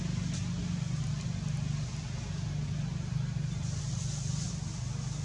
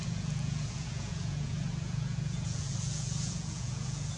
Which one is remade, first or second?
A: second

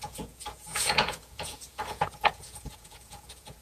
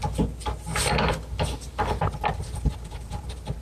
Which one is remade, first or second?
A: first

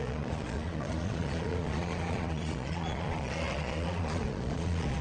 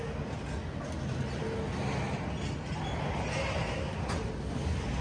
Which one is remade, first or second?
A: first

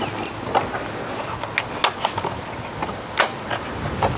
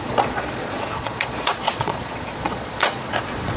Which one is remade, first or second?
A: second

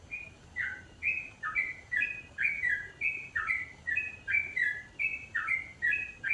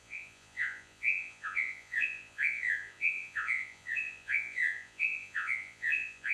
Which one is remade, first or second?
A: second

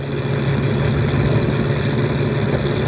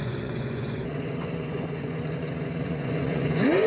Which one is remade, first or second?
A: second